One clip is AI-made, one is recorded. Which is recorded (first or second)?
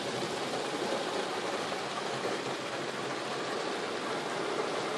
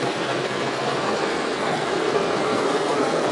first